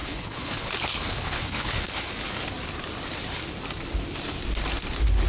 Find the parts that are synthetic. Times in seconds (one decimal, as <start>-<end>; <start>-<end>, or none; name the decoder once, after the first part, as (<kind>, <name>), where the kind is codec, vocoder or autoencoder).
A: 0.0-2.1 (codec, HILCodec)